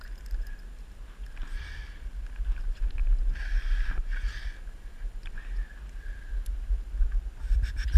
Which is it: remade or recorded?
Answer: recorded